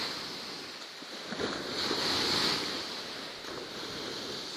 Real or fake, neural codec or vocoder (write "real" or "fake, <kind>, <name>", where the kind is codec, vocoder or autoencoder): real